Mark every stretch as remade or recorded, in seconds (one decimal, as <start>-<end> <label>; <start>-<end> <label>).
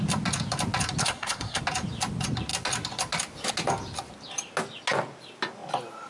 0.0-1.0 recorded; 1.0-1.6 remade; 1.6-6.1 recorded